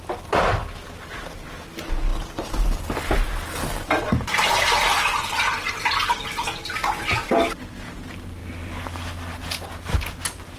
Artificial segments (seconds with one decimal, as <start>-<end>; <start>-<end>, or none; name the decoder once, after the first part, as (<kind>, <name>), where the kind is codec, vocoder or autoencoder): none